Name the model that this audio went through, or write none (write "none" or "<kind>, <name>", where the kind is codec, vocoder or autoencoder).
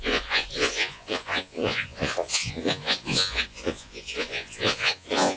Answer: vocoder, Vocos